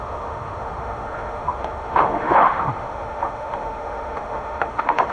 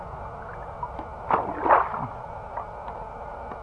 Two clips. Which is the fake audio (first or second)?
first